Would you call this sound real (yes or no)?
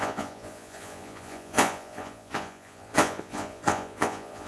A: no